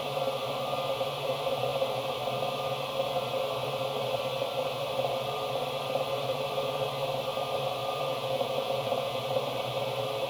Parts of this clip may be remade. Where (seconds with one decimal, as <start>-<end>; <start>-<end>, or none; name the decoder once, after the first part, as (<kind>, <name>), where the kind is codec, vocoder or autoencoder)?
8.1-9.2 (vocoder, Vocos)